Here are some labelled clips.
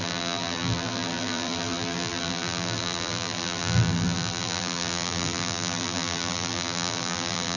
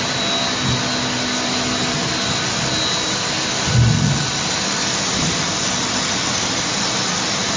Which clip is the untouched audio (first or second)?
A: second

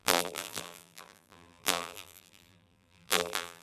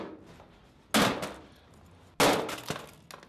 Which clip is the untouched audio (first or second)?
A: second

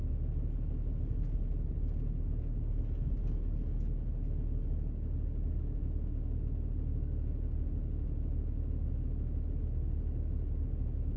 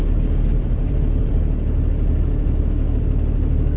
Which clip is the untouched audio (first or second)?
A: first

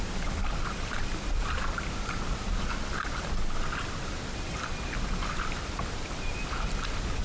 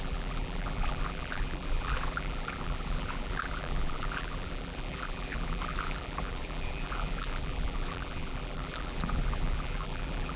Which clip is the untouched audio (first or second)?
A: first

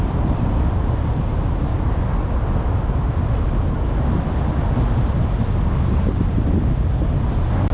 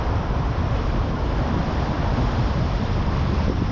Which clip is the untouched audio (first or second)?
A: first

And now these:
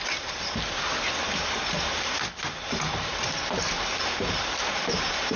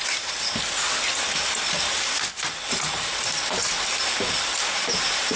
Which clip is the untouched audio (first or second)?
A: first